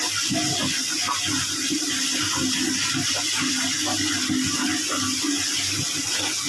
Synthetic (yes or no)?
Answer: no